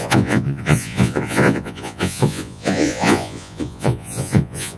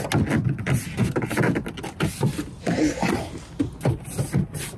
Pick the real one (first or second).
second